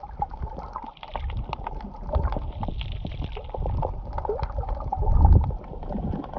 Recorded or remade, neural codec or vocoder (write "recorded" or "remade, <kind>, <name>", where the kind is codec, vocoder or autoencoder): recorded